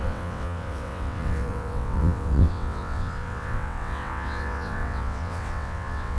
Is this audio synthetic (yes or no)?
yes